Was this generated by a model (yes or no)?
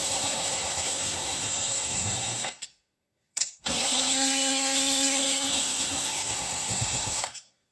yes